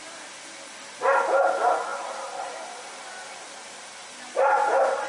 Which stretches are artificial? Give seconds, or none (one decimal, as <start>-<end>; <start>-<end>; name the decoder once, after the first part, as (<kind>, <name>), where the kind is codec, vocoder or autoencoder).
none